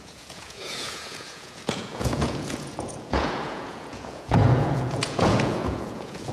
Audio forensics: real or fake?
fake